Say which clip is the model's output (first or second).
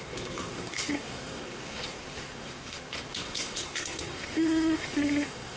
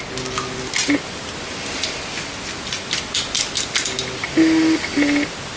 first